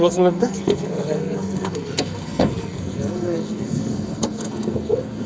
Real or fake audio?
fake